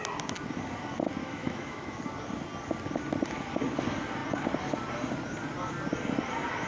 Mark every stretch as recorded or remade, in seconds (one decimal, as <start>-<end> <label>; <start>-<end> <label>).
0.0-1.2 recorded; 1.2-2.0 remade; 2.0-6.7 recorded